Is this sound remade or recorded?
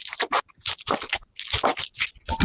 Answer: recorded